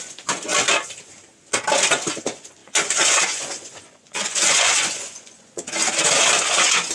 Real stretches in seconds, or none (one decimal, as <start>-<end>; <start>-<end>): 0.5-2.2; 5.8-6.3